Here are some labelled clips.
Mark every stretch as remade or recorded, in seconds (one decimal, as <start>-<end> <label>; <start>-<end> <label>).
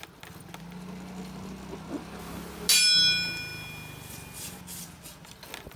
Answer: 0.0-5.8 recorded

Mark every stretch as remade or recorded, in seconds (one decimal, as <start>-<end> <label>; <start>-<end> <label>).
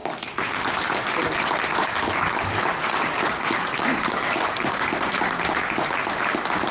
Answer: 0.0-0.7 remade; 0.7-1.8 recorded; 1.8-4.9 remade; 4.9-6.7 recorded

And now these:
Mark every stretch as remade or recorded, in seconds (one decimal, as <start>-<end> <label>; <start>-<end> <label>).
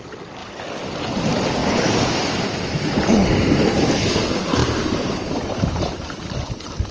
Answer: 0.0-1.6 recorded; 1.6-3.1 remade; 3.1-4.6 recorded; 4.6-6.9 remade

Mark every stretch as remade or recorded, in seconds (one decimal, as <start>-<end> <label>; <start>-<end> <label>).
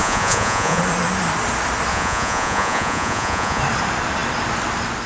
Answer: 0.0-0.8 remade; 0.8-1.9 recorded; 1.9-3.6 remade; 3.6-5.1 recorded